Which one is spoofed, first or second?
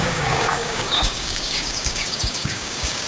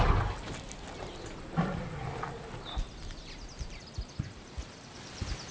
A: first